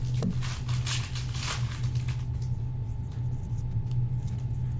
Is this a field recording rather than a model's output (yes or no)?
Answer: yes